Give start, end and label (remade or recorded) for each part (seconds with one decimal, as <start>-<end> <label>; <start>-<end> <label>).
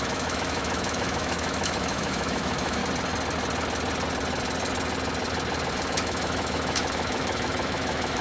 0.0-2.8 remade; 2.8-5.7 recorded; 5.7-8.2 remade